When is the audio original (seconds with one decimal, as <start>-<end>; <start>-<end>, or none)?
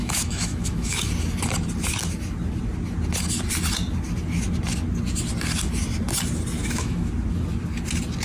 1.1-6.6; 7.1-8.2